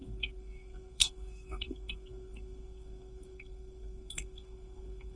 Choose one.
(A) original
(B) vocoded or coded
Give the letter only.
B